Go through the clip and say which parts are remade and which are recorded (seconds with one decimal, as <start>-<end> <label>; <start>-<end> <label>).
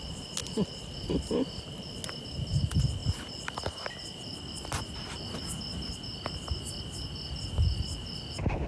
0.0-8.7 recorded